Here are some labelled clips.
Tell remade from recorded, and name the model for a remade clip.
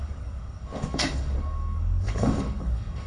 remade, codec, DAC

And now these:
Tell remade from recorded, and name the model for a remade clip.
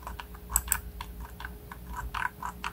recorded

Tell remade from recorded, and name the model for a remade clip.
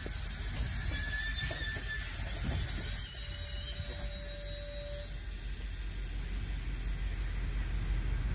recorded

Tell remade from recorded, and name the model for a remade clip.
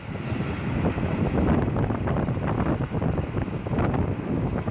recorded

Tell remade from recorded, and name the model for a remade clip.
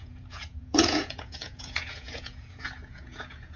remade, vocoder, Vocos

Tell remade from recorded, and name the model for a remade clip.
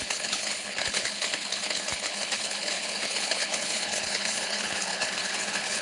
remade, codec, HILCodec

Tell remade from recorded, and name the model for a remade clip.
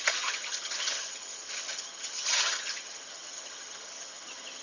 remade, vocoder, HiFi-GAN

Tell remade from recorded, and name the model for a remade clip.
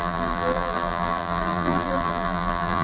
remade, vocoder, BigVGAN v2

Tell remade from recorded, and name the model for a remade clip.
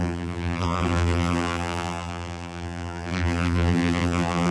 remade, vocoder, BigVGAN v2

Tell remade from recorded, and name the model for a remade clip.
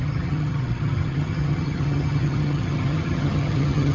remade, vocoder, HiFi-GAN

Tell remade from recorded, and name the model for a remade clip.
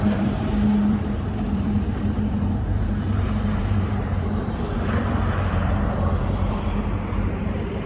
remade, vocoder, BigVGAN v2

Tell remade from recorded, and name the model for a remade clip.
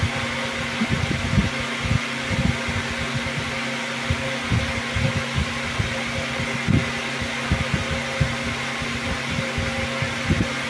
recorded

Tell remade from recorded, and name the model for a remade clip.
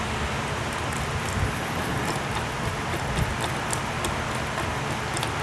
recorded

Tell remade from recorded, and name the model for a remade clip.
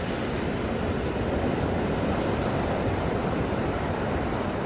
remade, vocoder, BigVGAN v2